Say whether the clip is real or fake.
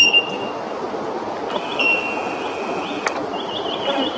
real